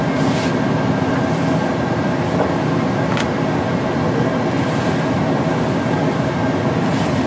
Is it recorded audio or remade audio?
recorded